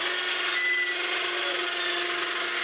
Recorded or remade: recorded